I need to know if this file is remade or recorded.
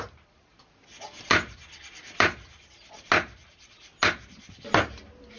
recorded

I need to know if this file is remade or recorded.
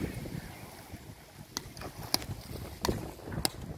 recorded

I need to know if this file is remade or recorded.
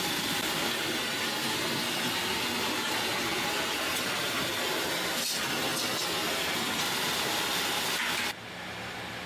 recorded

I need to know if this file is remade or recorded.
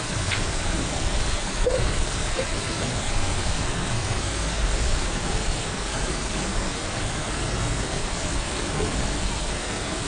remade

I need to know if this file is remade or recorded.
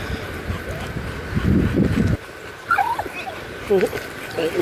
recorded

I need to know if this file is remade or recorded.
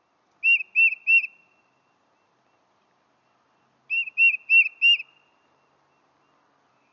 recorded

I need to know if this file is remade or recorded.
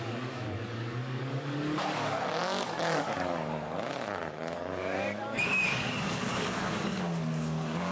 remade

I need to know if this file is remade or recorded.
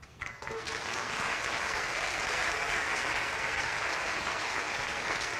remade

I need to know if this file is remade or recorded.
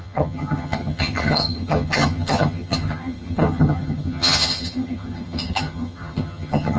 remade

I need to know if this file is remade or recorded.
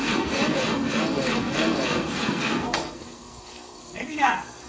remade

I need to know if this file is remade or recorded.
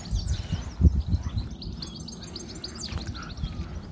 recorded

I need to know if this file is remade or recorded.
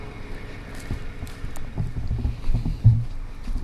recorded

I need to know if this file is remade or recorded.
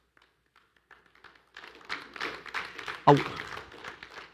recorded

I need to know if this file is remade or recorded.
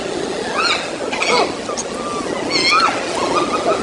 recorded